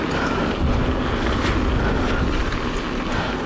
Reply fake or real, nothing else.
real